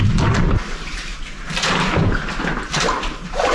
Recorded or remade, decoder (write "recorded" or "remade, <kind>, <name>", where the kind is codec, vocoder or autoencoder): remade, vocoder, BigVGAN v2